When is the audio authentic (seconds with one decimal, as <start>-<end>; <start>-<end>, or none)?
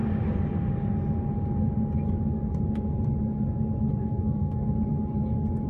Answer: 0.0-4.0; 4.7-5.7